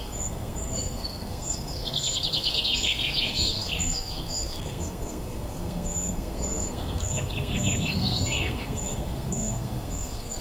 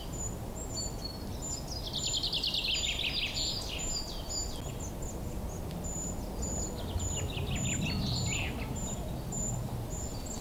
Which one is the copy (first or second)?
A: first